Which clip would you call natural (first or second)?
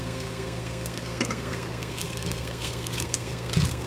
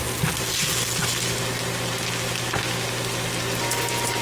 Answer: second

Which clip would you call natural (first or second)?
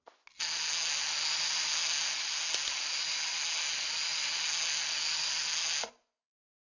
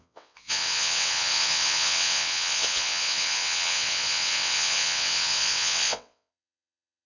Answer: first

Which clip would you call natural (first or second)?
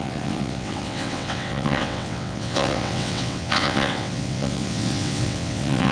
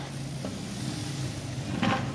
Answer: second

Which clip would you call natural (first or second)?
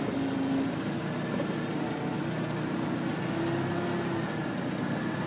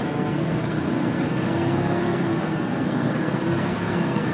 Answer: first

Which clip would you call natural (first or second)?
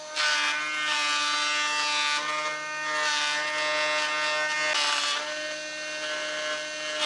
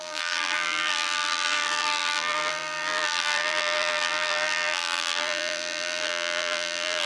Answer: first